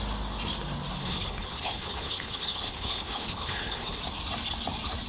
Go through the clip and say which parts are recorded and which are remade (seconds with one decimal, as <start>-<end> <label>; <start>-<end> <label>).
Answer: 0.0-1.0 recorded; 1.0-4.0 remade; 4.0-5.1 recorded